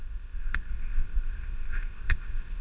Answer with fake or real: fake